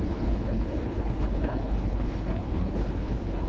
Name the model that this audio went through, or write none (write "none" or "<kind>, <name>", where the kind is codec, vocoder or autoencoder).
codec, HILCodec